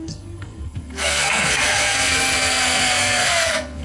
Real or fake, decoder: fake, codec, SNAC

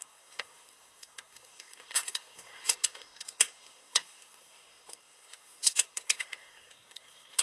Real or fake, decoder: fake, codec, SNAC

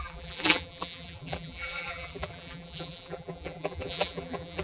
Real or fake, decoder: fake, vocoder, BigVGAN v2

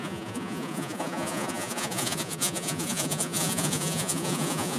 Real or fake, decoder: fake, vocoder, Vocos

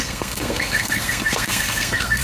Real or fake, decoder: fake, codec, SNAC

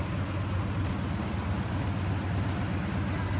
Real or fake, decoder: real